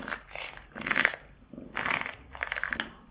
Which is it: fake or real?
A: real